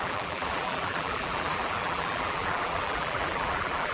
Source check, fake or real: fake